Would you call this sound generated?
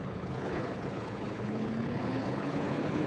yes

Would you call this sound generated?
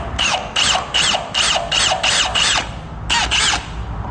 no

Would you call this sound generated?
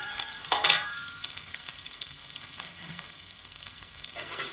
yes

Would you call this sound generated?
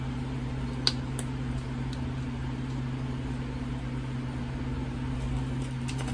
no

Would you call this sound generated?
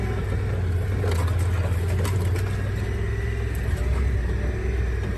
no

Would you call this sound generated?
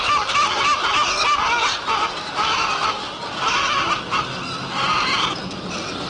no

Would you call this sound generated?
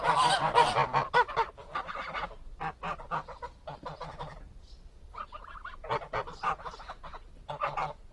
no